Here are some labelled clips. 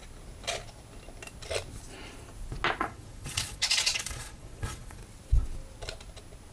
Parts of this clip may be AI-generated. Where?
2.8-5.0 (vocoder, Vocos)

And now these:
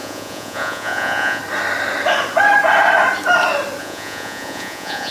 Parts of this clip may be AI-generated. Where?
0.0-1.4 (vocoder, Vocos); 3.8-5.1

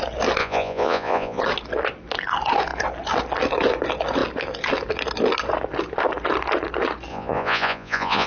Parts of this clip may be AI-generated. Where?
0.4-1.4 (vocoder, Vocos); 7.1-8.3

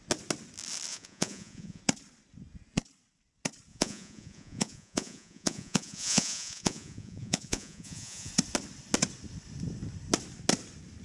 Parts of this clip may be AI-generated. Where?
0.9-1.8 (vocoder, Vocos); 3.7-8.3

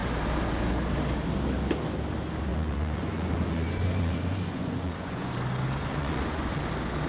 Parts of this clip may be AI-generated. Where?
2.5-5.3 (vocoder, Vocos); 6.0-6.6

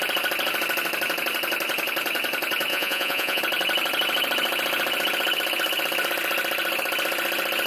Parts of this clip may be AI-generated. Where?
2.7-3.4 (vocoder, Vocos)